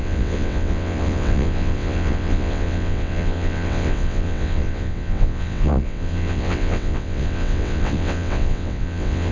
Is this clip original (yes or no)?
no